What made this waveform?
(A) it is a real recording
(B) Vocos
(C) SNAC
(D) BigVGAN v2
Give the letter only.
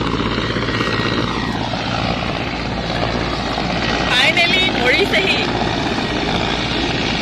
A